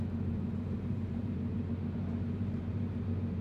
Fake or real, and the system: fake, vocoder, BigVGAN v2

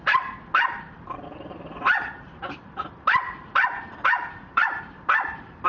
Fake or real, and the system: fake, vocoder, BigVGAN v2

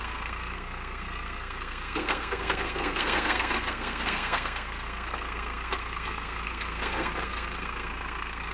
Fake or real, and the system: fake, codec, SNAC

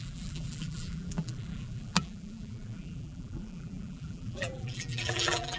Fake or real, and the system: fake, vocoder, BigVGAN v2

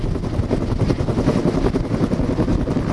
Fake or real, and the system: real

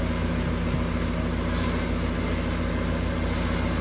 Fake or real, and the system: real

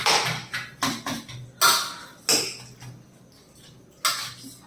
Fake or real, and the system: real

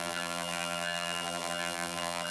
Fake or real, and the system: fake, vocoder, BigVGAN v2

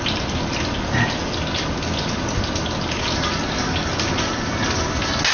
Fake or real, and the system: real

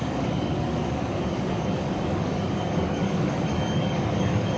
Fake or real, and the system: fake, codec, DAC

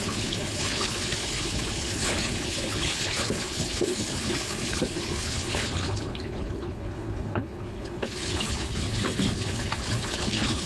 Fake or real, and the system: fake, codec, HILCodec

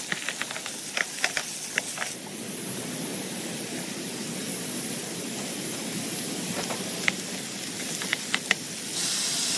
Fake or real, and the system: real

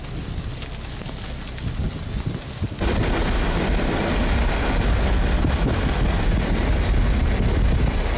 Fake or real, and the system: real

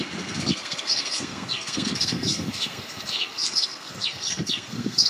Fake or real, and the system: fake, codec, SNAC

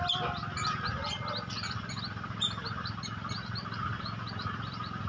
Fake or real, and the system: real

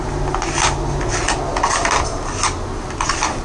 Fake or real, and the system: real